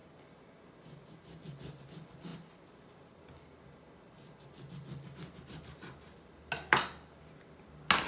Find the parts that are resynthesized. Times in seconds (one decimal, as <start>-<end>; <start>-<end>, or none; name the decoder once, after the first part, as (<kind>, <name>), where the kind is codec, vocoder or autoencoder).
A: none

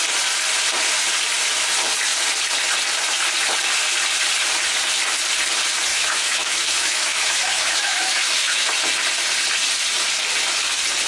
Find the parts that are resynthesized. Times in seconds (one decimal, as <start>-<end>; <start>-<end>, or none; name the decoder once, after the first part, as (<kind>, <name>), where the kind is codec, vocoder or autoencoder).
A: 5.9-8.7 (autoencoder, DAC-VAE)

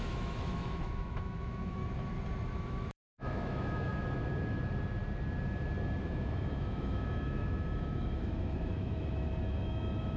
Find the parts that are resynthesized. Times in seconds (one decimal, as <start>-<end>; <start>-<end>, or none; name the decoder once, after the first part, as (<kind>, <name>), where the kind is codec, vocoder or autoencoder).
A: 0.0-1.8 (autoencoder, DAC-VAE); 2.5-3.9; 6.0-10.2